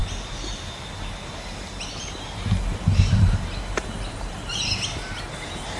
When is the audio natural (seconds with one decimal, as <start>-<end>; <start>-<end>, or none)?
0.0-5.8

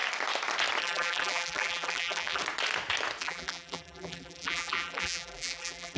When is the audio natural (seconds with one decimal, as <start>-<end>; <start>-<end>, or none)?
0.0-0.8; 2.4-3.2

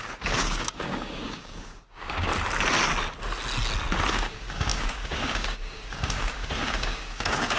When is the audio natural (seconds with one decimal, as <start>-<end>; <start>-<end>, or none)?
2.3-4.1

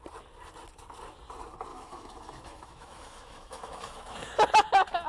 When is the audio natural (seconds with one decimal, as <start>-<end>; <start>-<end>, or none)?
0.0-1.7; 4.3-5.1

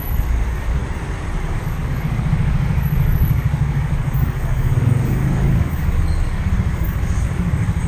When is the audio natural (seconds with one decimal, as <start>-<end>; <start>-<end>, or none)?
0.8-1.4